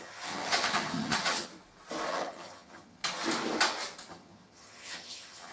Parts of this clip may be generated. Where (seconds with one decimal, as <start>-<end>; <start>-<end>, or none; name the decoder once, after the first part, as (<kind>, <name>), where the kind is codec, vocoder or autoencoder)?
0.0-1.5 (vocoder, HiFi-GAN); 2.1-3.0; 4.1-5.5